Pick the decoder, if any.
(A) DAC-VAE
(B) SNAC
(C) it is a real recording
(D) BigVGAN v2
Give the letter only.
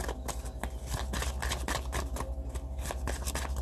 C